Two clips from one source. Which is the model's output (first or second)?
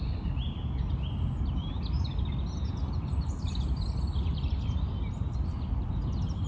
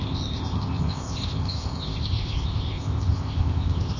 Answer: second